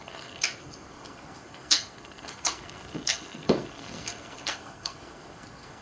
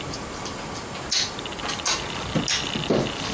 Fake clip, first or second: first